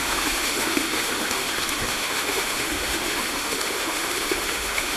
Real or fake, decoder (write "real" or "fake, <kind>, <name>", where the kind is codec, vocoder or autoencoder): fake, autoencoder, DAC-VAE